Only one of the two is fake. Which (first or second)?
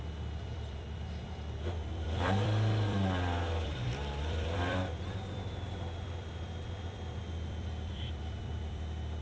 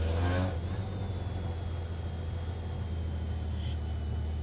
first